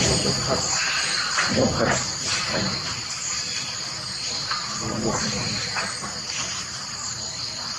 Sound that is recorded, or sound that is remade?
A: remade